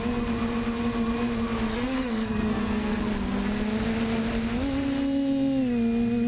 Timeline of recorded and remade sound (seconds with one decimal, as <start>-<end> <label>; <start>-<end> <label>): 0.0-1.7 recorded; 1.7-3.0 remade; 3.0-6.3 recorded